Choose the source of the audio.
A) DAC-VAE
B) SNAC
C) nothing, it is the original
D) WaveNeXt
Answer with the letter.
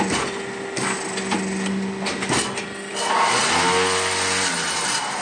C